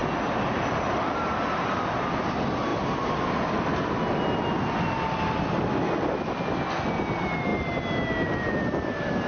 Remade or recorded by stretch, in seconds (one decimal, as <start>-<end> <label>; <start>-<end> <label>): 0.0-9.3 recorded